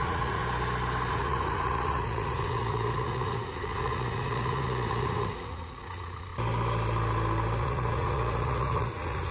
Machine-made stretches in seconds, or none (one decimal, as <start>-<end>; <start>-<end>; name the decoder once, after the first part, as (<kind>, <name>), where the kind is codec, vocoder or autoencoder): 0.0-0.4 (vocoder, Vocos); 1.1-6.3; 7.6-9.3